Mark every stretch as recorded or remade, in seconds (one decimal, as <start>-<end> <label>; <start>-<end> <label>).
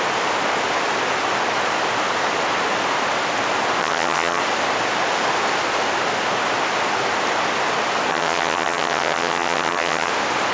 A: 0.0-3.8 recorded; 3.8-4.4 remade; 4.4-8.1 recorded; 8.1-10.1 remade; 10.1-10.5 recorded